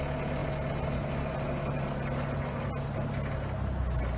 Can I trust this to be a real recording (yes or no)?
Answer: yes